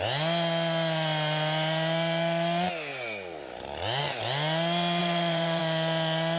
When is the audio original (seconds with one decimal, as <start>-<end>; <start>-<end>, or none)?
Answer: 0.0-5.0; 5.6-6.4